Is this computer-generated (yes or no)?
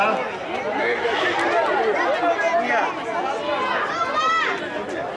no